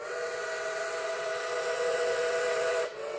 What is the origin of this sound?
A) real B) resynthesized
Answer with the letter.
B